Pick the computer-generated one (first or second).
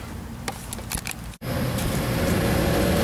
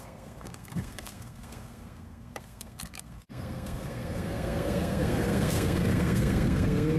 second